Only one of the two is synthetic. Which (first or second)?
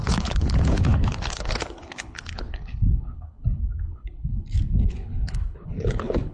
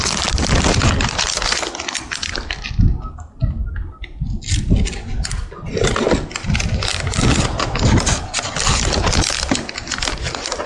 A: first